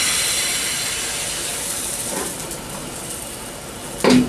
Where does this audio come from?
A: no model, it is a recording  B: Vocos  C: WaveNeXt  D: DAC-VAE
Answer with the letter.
A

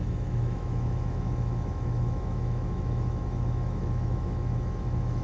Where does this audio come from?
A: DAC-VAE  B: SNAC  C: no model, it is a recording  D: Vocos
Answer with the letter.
A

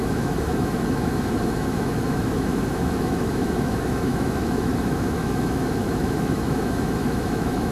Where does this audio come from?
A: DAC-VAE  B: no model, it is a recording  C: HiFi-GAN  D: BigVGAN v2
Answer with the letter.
A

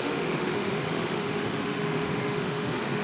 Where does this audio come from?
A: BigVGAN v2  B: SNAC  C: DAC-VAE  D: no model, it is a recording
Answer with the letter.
C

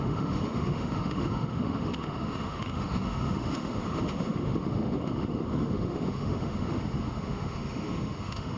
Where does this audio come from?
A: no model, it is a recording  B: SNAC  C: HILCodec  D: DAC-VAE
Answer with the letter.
D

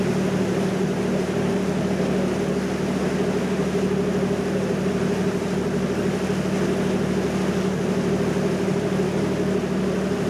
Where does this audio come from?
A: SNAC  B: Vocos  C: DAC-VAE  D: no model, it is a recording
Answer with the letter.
D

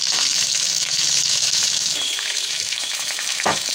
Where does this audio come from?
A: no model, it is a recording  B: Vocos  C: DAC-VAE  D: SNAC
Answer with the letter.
C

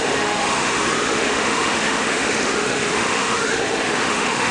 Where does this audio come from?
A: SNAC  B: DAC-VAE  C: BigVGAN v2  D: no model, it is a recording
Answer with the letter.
B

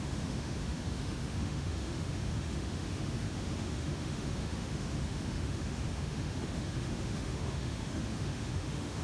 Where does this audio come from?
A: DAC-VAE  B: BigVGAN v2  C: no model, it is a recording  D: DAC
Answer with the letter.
A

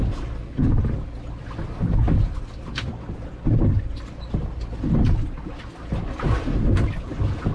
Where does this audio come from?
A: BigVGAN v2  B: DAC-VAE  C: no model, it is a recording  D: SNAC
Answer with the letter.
C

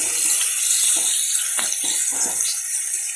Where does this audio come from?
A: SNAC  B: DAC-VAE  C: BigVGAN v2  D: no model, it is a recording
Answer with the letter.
D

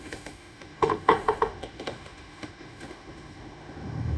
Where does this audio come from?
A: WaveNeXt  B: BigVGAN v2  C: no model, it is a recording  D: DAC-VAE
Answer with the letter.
D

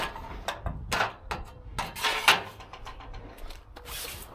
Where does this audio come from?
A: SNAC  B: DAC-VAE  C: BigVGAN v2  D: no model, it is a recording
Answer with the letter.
D